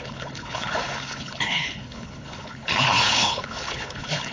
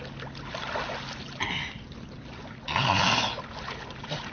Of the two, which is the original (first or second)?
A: second